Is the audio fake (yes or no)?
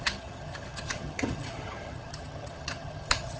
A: yes